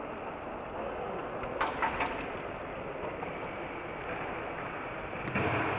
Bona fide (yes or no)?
yes